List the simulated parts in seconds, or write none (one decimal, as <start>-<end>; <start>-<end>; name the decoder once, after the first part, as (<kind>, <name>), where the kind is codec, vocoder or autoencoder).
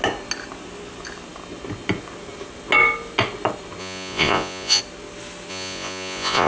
3.8-4.8 (vocoder, Vocos); 5.5-6.5